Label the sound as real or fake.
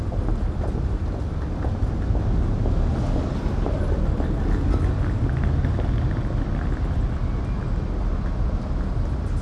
real